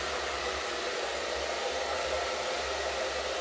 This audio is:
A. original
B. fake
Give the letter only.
A